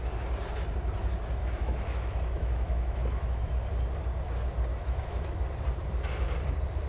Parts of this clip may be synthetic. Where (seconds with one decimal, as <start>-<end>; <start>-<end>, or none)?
1.4-3.5; 4.7-5.4